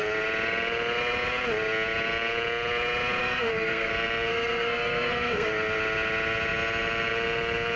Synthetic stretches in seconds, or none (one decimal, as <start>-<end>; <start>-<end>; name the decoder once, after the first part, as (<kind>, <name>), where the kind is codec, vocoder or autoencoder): 3.2-3.9 (codec, SNAC); 4.3-5.5